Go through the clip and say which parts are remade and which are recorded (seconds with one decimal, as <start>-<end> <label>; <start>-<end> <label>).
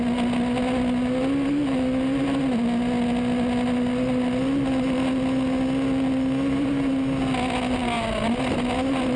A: 0.0-9.2 recorded